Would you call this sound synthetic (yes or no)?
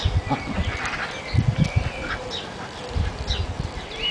no